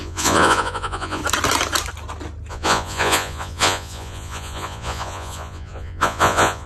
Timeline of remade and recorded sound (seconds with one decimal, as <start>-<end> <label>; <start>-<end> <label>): 0.0-1.2 remade; 1.2-2.5 recorded; 2.5-6.7 remade